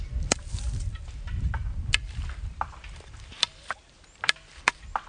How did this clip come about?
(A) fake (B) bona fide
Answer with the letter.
B